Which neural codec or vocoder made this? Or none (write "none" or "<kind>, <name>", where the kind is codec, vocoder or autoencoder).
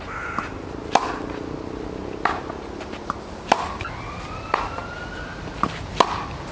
none